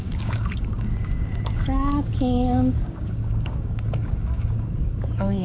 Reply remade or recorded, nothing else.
remade